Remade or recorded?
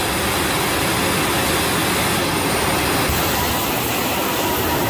recorded